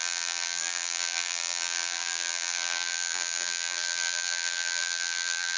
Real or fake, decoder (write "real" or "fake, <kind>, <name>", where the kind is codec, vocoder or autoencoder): fake, vocoder, BigVGAN v2